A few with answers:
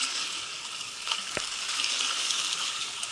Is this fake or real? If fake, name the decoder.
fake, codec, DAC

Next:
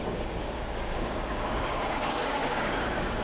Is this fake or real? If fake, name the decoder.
fake, codec, DAC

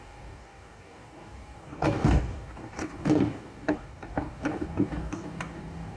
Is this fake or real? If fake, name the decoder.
fake, codec, DAC